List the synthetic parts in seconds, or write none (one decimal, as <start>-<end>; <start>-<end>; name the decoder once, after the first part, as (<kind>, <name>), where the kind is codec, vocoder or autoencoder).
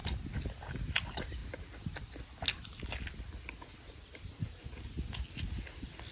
none